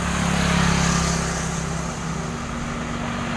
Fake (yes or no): no